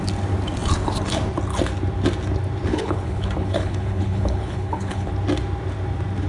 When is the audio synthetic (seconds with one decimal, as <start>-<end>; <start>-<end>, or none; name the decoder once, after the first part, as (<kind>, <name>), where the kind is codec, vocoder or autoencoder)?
2.7-5.1 (codec, HILCodec)